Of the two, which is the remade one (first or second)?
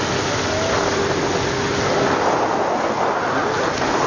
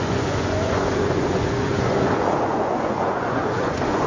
second